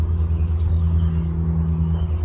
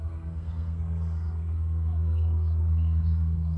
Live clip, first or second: first